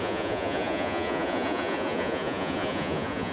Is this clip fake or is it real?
fake